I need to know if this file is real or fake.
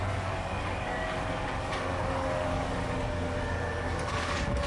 fake